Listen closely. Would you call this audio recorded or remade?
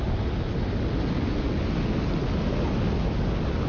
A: recorded